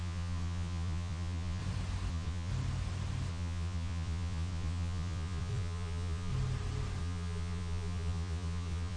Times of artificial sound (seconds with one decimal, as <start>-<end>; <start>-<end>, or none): 0.0-1.6; 2.1-2.5; 3.3-6.3; 7.0-9.0